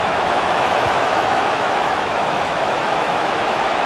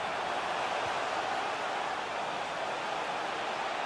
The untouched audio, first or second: second